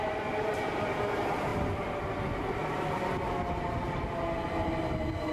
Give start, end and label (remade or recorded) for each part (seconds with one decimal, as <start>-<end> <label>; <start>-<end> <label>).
0.0-5.3 recorded